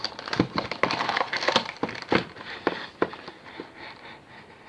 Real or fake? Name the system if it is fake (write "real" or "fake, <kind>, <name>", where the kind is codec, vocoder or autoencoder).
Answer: real